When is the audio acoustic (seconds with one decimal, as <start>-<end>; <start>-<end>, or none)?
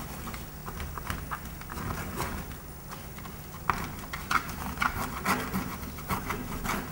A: 0.0-6.9